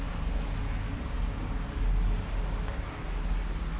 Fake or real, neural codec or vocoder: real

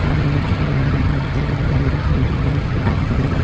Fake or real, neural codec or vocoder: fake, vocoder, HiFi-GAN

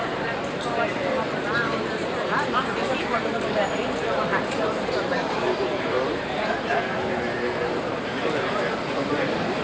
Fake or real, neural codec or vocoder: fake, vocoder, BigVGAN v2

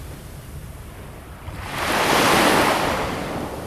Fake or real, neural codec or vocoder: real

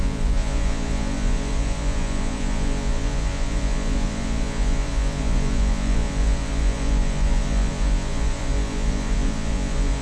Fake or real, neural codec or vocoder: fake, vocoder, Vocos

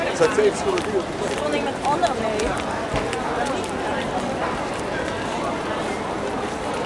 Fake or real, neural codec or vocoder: real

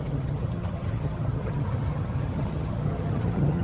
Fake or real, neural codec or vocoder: fake, vocoder, HiFi-GAN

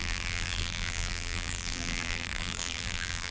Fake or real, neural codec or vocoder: fake, vocoder, BigVGAN v2